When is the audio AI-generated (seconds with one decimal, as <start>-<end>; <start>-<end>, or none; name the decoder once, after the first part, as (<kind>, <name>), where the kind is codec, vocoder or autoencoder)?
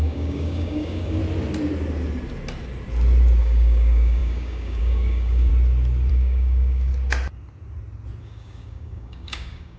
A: 0.0-1.2 (codec, DAC); 3.4-5.5; 6.1-6.9; 8.2-9.8